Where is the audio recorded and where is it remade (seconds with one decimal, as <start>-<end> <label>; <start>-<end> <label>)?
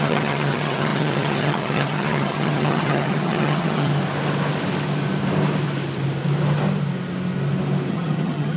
0.0-3.9 remade; 3.9-7.9 recorded; 7.9-8.6 remade